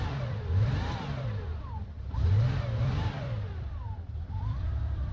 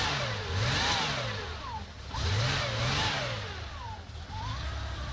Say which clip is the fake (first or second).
first